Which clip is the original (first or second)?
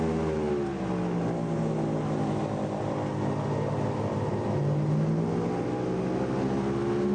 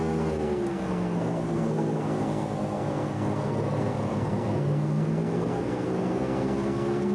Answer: first